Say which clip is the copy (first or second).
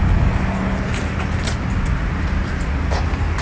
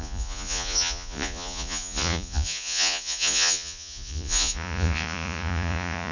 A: second